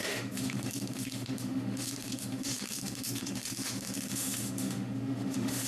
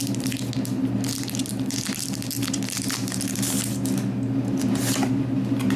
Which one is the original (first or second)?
second